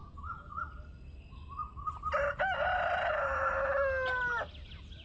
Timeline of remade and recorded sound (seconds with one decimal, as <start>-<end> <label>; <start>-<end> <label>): 0.0-0.5 remade; 0.5-5.0 recorded